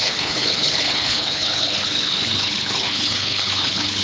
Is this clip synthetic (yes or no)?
yes